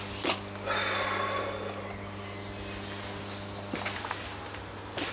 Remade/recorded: recorded